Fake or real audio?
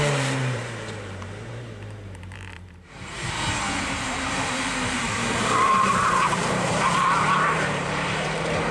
fake